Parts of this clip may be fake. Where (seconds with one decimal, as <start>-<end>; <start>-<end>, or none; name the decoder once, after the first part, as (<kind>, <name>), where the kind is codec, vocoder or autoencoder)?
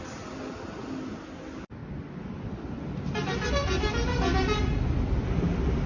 none